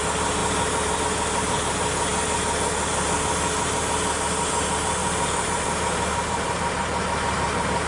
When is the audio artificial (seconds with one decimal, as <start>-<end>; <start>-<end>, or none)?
0.4-1.0; 5.0-6.8